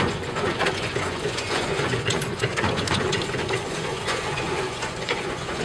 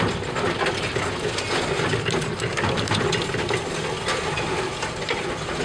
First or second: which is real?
second